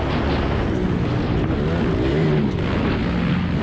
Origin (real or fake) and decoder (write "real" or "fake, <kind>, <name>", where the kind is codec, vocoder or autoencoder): real